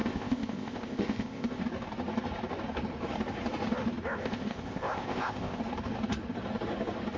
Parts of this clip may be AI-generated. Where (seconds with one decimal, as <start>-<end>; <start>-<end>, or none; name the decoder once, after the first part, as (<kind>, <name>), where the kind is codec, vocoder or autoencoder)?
0.0-1.6 (codec, ZipCodec); 4.2-5.6